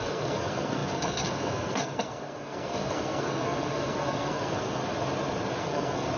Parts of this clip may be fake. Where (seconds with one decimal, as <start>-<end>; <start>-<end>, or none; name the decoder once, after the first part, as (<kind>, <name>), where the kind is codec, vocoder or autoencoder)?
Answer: 0.0-4.8 (codec, SNAC); 5.6-6.2